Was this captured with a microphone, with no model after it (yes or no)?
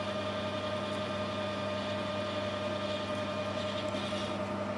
yes